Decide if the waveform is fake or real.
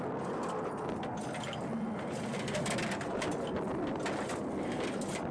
real